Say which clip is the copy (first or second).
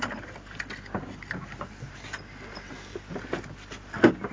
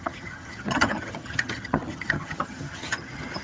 second